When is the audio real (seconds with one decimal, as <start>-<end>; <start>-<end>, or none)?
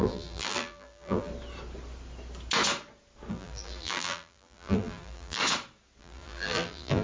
1.3-3.3; 5.4-6.0